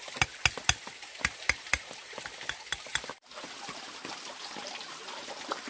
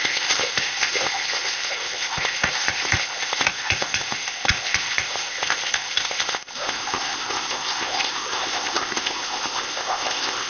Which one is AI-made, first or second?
second